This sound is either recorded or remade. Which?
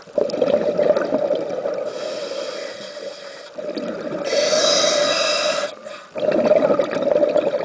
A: recorded